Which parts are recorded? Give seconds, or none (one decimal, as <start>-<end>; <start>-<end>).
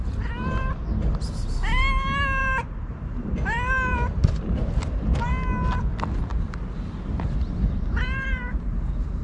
0.0-2.4; 5.3-6.3